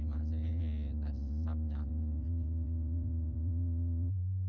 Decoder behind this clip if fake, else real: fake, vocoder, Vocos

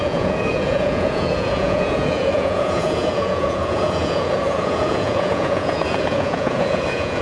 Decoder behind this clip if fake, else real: fake, vocoder, Vocos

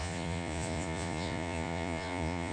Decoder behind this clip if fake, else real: fake, vocoder, Vocos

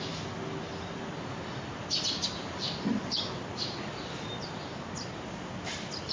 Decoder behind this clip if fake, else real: real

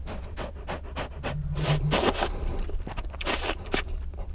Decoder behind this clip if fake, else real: real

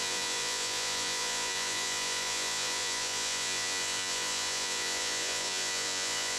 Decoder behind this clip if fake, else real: fake, vocoder, Vocos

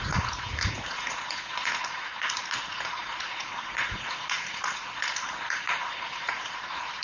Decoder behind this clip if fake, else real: fake, vocoder, Vocos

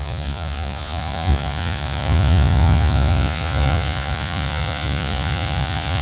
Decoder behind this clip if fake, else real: fake, vocoder, Vocos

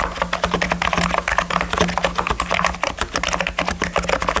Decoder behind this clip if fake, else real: real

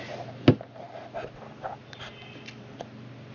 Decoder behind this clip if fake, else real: real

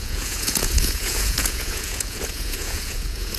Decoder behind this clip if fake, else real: fake, vocoder, Vocos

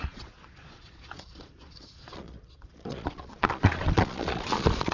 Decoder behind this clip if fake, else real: fake, vocoder, Vocos